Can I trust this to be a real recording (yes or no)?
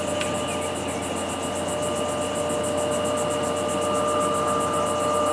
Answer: yes